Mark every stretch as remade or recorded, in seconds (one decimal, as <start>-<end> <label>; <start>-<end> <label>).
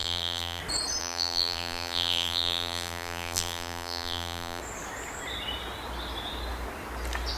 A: 0.0-0.6 remade; 0.6-1.0 recorded; 1.0-4.6 remade; 4.6-7.4 recorded